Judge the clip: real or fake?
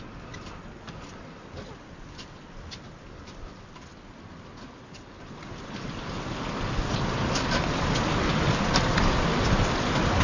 real